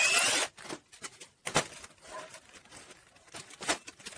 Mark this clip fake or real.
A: real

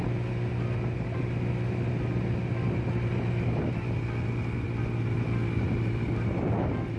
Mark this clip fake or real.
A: real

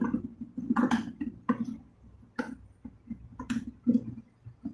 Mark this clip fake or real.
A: real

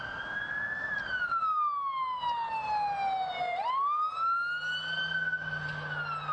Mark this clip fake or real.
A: real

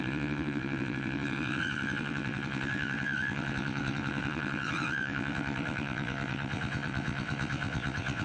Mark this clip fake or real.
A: fake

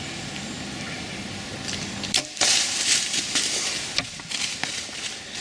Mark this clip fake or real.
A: real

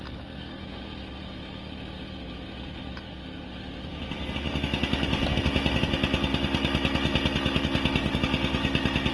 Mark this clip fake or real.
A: real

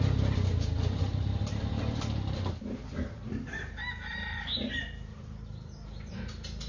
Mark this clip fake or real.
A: real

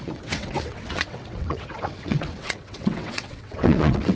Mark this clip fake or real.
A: fake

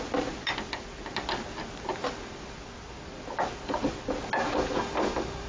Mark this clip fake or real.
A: real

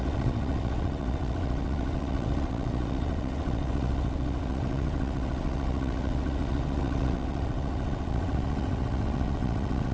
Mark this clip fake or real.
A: fake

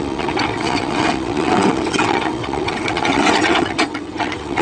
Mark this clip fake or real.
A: fake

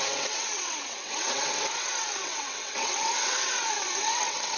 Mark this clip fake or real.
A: fake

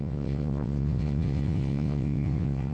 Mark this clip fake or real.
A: fake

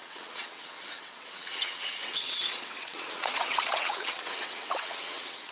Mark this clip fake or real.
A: fake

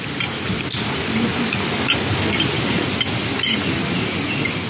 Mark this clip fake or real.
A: real